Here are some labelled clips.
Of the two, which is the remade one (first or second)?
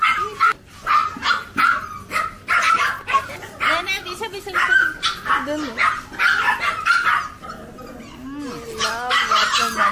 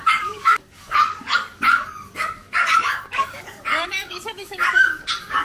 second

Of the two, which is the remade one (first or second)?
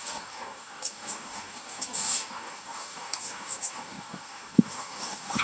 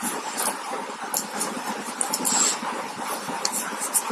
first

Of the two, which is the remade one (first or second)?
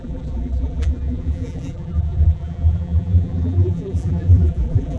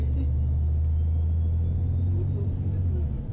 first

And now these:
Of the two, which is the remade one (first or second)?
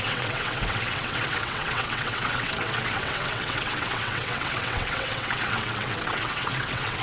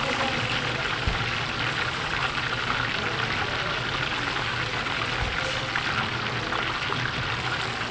first